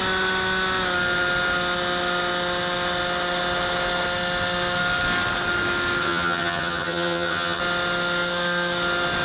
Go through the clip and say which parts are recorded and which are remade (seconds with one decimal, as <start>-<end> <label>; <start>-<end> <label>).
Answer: 0.0-6.0 recorded; 6.0-7.6 remade; 7.6-9.2 recorded

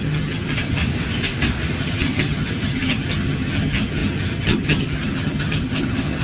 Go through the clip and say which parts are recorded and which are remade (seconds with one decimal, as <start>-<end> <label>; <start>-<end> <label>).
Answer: 0.0-0.8 remade; 0.8-1.8 recorded; 1.8-6.2 remade

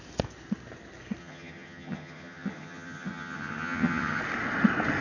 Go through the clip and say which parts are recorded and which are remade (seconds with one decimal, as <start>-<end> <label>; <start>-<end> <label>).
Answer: 0.0-1.2 recorded; 1.2-4.2 remade; 4.2-5.0 recorded

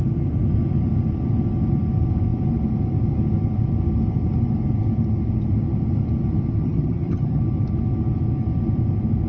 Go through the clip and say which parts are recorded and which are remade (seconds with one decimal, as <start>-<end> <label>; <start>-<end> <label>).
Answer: 0.0-6.6 recorded; 6.6-7.4 remade; 7.4-9.3 recorded